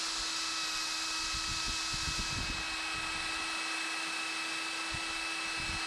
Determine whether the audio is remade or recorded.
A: recorded